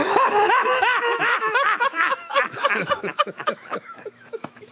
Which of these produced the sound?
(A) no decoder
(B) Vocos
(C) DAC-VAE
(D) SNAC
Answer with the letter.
C